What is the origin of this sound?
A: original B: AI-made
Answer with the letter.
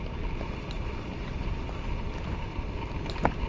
A